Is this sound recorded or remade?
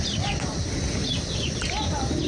recorded